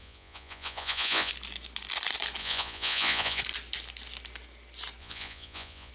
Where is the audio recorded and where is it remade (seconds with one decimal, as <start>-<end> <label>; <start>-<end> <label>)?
0.0-1.3 remade; 1.3-2.4 recorded; 2.4-3.4 remade; 3.4-5.0 recorded; 5.0-5.9 remade